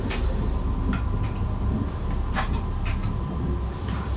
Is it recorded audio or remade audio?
recorded